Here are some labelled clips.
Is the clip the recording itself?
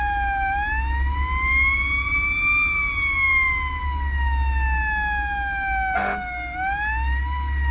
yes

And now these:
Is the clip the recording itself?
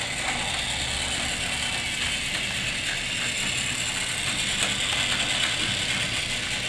yes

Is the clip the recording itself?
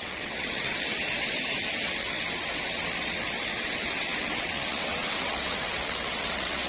no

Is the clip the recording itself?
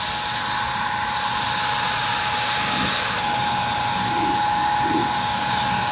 yes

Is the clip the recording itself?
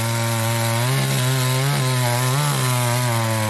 yes